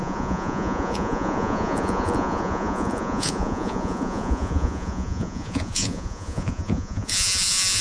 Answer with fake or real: fake